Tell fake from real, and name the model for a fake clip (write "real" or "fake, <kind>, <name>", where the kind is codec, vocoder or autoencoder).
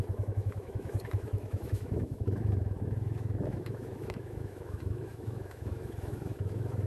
fake, autoencoder, DAC-VAE